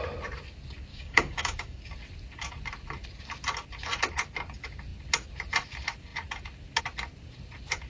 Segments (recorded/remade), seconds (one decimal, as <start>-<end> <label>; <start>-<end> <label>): 0.0-0.9 recorded; 0.9-1.8 remade; 1.8-7.9 recorded